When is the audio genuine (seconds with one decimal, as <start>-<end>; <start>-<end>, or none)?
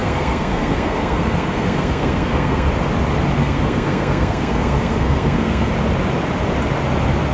2.7-3.4; 5.7-7.3